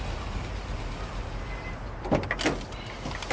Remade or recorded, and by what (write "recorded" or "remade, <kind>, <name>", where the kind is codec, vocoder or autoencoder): recorded